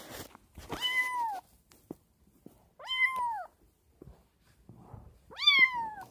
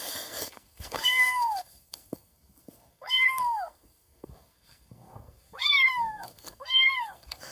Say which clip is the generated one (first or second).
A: second